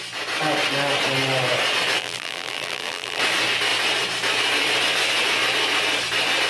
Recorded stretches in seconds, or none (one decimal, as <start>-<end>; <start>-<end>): 0.0-2.0; 3.2-6.5